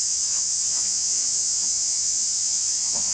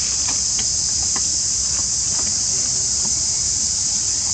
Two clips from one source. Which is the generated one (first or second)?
first